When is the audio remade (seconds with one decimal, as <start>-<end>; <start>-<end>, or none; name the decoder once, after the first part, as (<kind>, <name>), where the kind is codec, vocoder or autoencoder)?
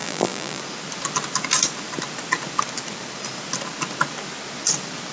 0.0-0.6 (vocoder, BigVGAN v2)